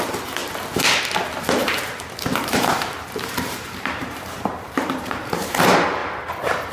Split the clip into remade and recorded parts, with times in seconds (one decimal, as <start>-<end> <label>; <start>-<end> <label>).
0.0-1.6 recorded; 1.6-5.6 remade; 5.6-6.7 recorded